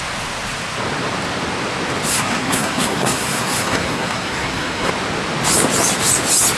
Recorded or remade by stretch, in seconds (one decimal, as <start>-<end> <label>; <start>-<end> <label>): 0.0-2.1 recorded; 2.1-4.9 remade; 4.9-6.6 recorded

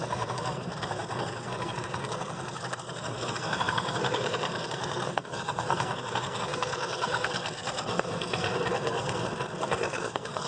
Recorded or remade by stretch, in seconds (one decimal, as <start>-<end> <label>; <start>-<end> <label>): 0.0-10.5 remade

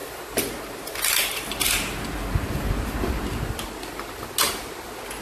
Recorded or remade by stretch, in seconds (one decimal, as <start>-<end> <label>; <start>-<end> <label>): 0.0-5.2 recorded